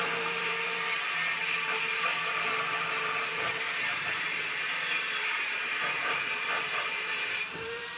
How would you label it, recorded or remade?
remade